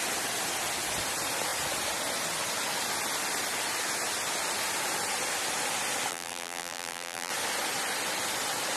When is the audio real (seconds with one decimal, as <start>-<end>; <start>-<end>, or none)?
0.0-6.1; 7.3-8.8